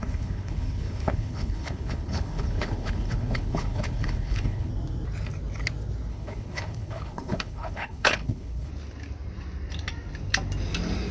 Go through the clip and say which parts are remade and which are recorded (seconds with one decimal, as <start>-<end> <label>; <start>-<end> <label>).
0.0-4.7 remade; 4.7-6.1 recorded; 6.1-8.7 remade; 8.7-11.1 recorded